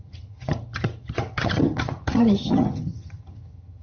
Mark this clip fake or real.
fake